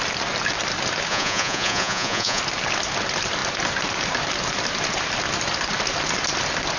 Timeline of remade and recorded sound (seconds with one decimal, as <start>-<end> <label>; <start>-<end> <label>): 0.0-1.1 recorded; 1.1-2.4 remade; 2.4-6.8 recorded